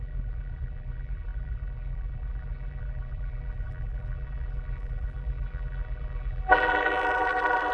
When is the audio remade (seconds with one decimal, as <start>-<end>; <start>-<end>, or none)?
0.0-7.7